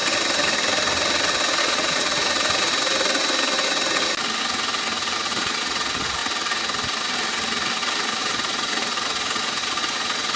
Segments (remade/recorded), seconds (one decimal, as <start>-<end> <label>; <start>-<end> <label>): 0.0-1.6 recorded; 1.6-2.1 remade; 2.1-5.2 recorded; 5.2-6.2 remade; 6.2-8.2 recorded; 8.2-10.4 remade